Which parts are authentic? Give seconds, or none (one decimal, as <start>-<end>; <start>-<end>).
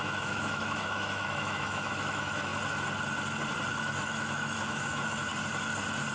2.5-3.8; 5.3-6.1